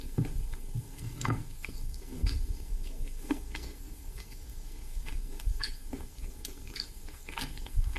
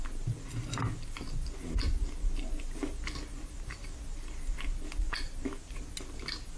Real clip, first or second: second